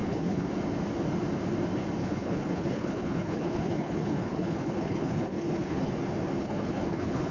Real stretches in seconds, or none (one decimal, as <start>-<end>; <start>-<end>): 0.5-2.0; 5.9-6.4